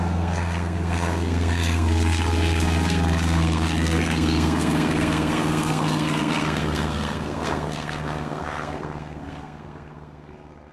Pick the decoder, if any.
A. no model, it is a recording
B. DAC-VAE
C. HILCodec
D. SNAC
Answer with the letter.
D